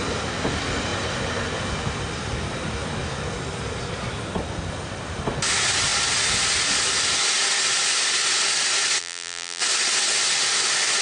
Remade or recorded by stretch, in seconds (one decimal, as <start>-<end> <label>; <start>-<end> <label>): 0.0-9.0 recorded; 9.0-9.6 remade; 9.6-11.0 recorded